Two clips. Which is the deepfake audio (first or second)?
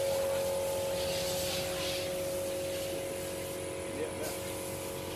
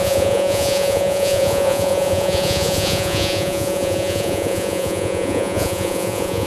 second